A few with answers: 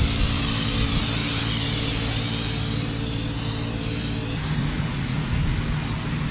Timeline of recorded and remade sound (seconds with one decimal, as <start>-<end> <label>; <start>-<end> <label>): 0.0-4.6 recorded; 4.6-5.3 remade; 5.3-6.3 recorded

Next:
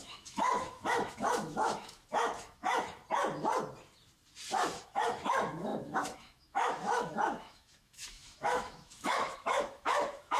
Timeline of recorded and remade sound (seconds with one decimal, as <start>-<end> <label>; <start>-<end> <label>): 0.0-3.0 remade; 3.0-4.8 recorded; 4.8-10.4 remade

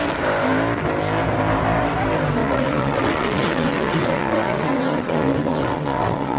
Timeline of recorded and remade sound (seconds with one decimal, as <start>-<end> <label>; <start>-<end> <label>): 0.0-2.4 recorded; 2.4-6.4 remade